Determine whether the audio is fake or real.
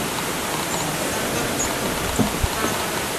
real